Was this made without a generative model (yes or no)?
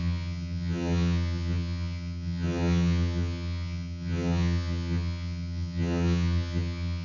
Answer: no